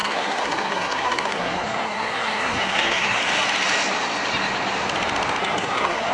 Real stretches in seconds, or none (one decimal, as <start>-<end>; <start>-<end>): 3.2-5.4